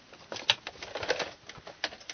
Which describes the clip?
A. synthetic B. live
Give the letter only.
B